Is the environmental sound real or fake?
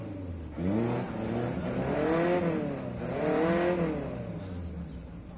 real